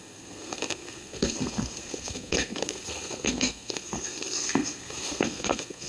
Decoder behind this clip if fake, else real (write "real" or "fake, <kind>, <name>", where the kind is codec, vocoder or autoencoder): fake, codec, SNAC